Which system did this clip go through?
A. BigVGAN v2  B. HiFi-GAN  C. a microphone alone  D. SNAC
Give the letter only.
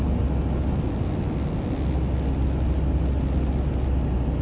C